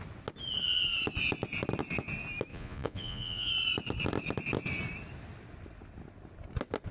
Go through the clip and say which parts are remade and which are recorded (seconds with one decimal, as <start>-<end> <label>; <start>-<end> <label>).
0.0-2.5 recorded; 2.5-3.5 remade; 3.5-6.9 recorded